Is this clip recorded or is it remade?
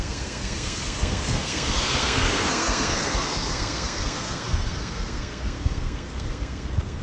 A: remade